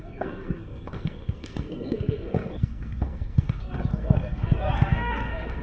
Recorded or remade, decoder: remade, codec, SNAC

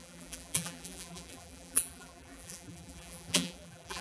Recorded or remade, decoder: remade, vocoder, BigVGAN v2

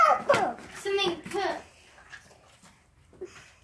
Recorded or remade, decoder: recorded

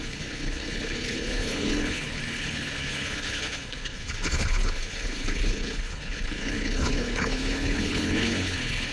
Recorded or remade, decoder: remade, codec, HILCodec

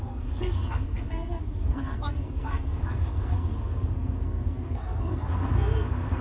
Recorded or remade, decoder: remade, codec, SNAC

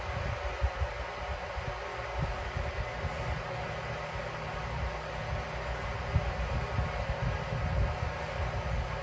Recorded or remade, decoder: recorded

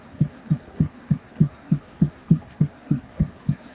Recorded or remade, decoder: remade, codec, SNAC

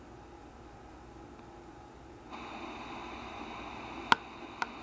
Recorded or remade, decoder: recorded